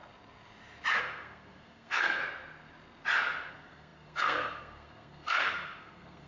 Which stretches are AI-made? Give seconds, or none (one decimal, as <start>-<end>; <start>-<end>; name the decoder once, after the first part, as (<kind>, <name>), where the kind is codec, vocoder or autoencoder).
1.0-2.2 (codec, SNAC); 3.5-6.3